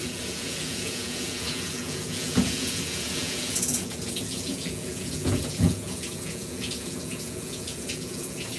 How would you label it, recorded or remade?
remade